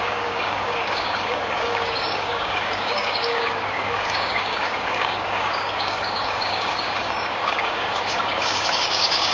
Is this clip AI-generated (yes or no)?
yes